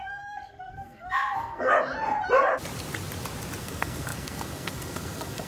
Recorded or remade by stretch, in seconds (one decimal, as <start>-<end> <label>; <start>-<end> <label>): 0.0-1.7 remade; 1.7-3.6 recorded; 3.6-5.5 remade